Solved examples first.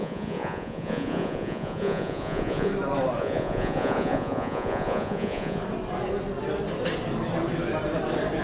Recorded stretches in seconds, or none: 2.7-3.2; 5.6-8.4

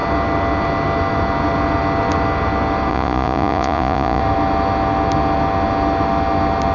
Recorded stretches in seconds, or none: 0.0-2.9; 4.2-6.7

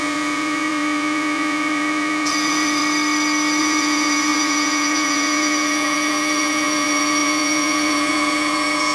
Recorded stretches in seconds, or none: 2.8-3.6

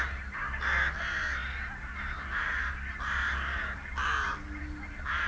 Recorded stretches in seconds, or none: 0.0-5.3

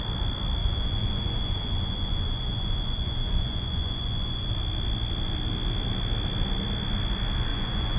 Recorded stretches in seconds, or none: 0.0-0.6; 4.5-7.5

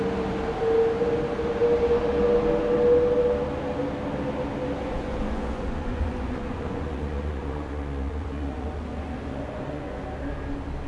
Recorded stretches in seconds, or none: 0.0-4.8; 10.0-10.9

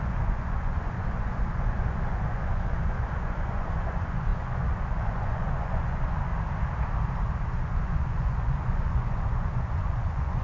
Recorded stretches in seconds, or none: 6.3-7.6